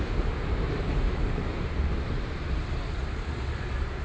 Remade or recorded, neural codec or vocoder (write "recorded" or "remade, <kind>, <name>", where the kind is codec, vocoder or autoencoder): remade, vocoder, BigVGAN v2